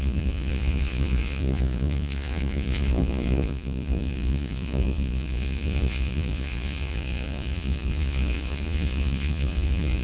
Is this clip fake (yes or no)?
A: yes